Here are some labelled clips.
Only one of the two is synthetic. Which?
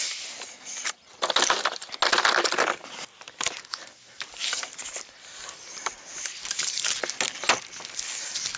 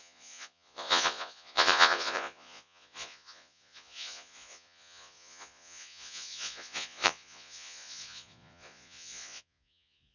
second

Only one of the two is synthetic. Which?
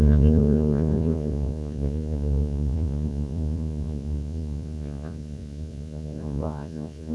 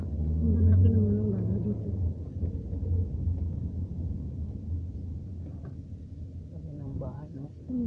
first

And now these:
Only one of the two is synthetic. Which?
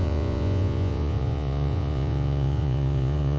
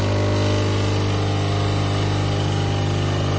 first